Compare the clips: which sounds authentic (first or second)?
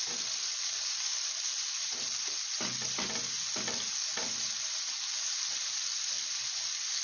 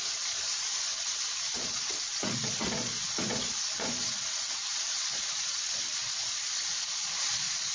first